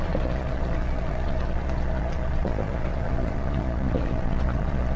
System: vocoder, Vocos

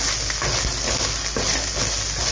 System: none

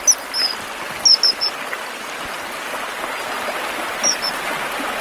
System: none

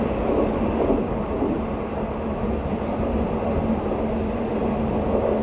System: none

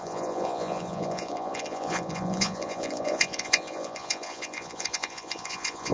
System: vocoder, Vocos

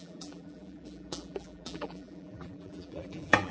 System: vocoder, BigVGAN v2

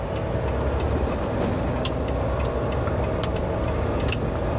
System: none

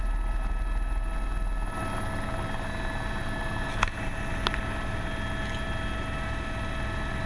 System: none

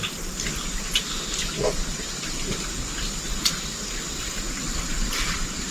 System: vocoder, BigVGAN v2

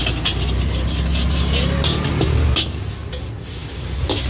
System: none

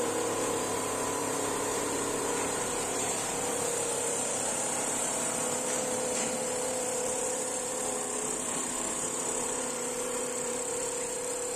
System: vocoder, BigVGAN v2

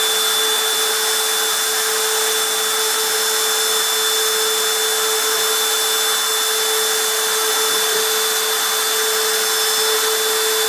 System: none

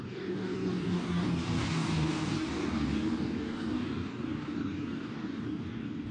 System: codec, DAC